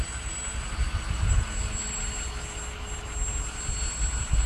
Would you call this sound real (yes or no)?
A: yes